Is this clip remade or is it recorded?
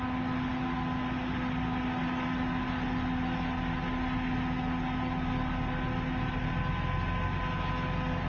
recorded